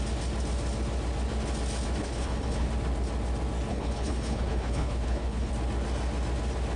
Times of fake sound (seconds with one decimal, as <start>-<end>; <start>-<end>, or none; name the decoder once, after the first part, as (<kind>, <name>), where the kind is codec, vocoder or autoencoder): 2.0-2.7 (codec, HILCodec); 3.7-5.5

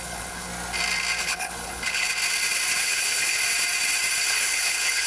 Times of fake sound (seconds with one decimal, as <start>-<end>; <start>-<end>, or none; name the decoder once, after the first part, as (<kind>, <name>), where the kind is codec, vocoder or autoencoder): 0.0-0.5 (codec, HILCodec); 1.2-2.1; 2.8-3.4; 4.2-5.1

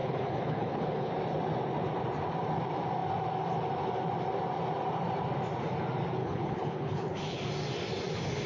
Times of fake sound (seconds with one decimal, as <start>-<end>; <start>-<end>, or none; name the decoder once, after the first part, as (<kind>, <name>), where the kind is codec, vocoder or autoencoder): 0.0-1.1 (codec, HILCodec); 6.2-7.4

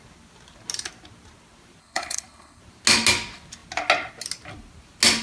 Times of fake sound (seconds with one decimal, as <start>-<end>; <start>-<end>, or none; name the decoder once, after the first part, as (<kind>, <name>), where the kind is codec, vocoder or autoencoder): 1.8-2.6 (codec, HILCodec)